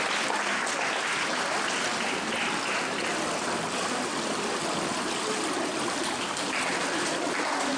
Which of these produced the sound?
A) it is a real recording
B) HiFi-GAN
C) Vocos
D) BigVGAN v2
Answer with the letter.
A